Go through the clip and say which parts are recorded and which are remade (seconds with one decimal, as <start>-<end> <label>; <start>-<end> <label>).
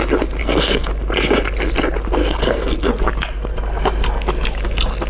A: 0.0-0.4 recorded; 0.4-0.9 remade; 0.9-2.2 recorded; 2.2-2.9 remade; 2.9-5.1 recorded